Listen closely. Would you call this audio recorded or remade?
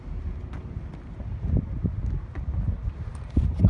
recorded